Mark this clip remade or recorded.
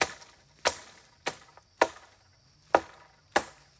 recorded